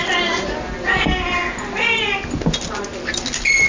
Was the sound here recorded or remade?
recorded